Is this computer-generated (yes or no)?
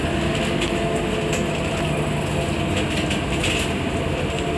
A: no